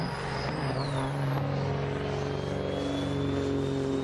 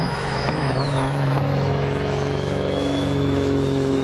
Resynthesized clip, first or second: second